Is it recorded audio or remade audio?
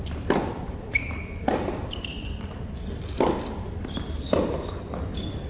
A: remade